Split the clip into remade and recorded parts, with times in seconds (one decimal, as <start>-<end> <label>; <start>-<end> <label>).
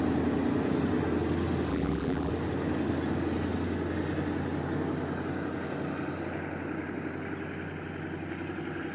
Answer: 0.0-1.7 recorded; 1.7-2.3 remade; 2.3-8.9 recorded